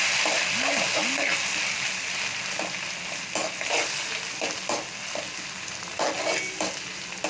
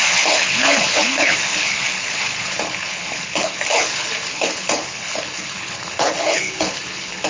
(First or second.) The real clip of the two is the first